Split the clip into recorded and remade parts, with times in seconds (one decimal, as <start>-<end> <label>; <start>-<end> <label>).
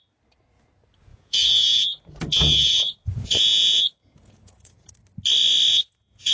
0.0-1.1 recorded; 1.1-4.9 remade; 4.9-5.7 recorded; 5.7-6.3 remade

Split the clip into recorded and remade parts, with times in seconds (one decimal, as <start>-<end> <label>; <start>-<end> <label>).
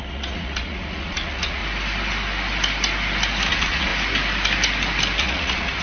0.0-1.6 remade; 1.6-3.5 recorded; 3.5-3.9 remade; 3.9-5.2 recorded; 5.2-5.8 remade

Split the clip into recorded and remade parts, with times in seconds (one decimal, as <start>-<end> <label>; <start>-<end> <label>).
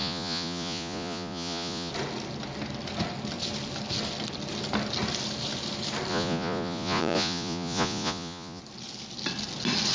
0.0-1.9 remade; 1.9-6.1 recorded; 6.1-8.6 remade; 8.6-9.9 recorded